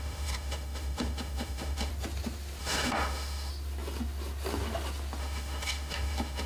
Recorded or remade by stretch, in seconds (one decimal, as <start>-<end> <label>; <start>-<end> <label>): 0.0-1.9 remade; 1.9-2.6 recorded; 2.6-3.5 remade; 3.5-5.2 recorded; 5.2-6.5 remade